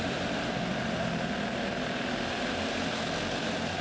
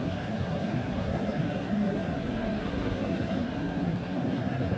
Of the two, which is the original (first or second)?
first